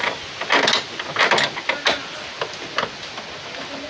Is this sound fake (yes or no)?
no